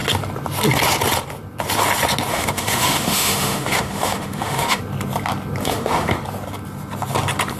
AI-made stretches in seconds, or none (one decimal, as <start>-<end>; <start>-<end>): 2.3-4.8; 5.6-6.1